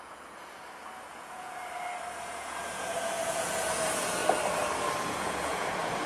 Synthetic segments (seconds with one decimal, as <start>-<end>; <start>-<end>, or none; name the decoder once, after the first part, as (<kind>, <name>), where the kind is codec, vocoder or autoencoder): 0.0-1.6 (vocoder, Vocos); 2.3-4.2; 5.1-6.1